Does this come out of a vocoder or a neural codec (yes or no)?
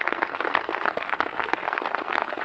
yes